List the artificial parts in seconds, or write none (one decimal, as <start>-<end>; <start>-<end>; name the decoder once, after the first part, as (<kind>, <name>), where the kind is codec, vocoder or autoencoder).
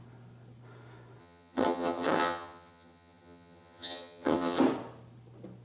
1.2-4.6 (vocoder, HiFi-GAN)